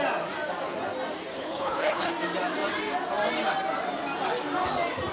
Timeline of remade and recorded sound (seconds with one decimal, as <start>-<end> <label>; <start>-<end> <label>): 0.0-1.3 recorded; 1.3-2.1 remade; 2.1-5.1 recorded

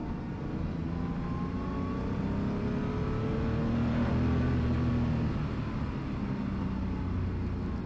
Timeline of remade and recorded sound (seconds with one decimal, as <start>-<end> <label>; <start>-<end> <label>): 0.0-7.9 recorded

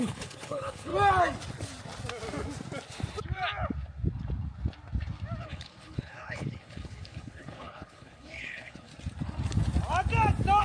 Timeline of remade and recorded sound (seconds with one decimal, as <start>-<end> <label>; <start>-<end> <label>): 0.0-0.9 remade; 0.9-5.4 recorded; 5.4-8.9 remade; 8.9-10.6 recorded

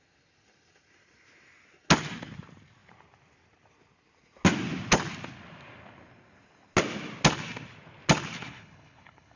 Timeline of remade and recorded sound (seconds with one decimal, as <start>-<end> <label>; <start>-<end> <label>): 0.0-8.4 recorded; 8.4-9.4 remade